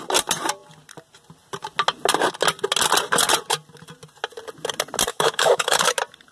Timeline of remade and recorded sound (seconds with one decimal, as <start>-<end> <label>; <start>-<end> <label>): 0.0-5.1 recorded; 5.1-5.8 remade; 5.8-6.3 recorded